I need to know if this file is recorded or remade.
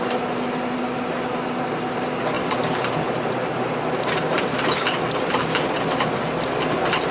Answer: recorded